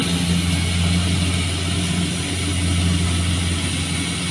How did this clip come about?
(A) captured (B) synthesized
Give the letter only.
A